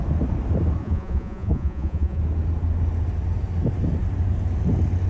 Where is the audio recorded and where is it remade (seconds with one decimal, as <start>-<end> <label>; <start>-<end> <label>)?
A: 0.0-0.8 recorded; 0.8-2.2 remade; 2.2-5.1 recorded